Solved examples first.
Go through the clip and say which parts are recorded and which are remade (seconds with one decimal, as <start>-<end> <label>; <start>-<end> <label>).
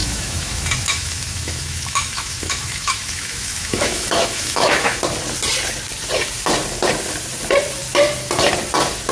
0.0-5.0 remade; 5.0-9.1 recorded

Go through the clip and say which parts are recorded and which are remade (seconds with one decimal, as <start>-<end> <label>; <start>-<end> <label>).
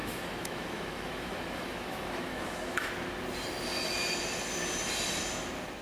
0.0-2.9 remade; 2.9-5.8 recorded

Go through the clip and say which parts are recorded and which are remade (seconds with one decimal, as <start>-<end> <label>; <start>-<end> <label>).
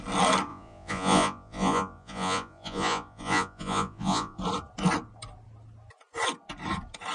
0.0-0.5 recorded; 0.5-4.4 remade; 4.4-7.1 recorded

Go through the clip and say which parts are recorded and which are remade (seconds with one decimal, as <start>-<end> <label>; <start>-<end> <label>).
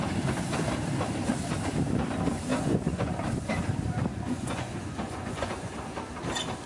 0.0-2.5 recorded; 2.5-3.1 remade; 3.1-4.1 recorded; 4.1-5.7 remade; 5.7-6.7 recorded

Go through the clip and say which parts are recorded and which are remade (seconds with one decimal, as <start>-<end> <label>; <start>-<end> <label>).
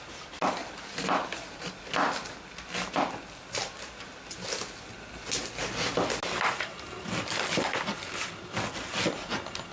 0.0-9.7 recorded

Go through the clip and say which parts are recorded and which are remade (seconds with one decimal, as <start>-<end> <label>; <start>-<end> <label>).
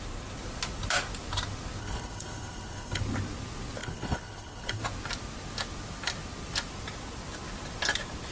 0.0-1.8 recorded; 1.8-3.0 remade; 3.0-3.8 recorded; 3.8-4.8 remade; 4.8-8.3 recorded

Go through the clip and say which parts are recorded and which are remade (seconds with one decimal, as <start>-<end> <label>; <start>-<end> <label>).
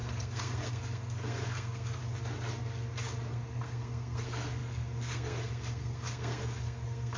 0.0-2.0 remade; 2.0-3.3 recorded; 3.3-7.2 remade